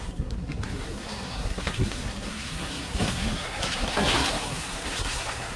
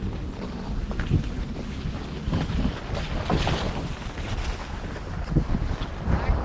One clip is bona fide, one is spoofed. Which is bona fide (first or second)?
second